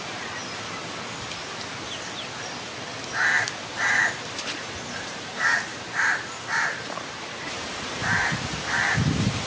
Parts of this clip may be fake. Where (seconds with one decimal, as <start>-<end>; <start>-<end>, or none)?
0.0-0.4; 3.8-8.0